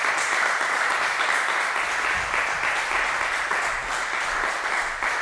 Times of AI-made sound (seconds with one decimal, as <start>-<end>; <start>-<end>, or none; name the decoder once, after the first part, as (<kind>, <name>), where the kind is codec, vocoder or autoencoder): none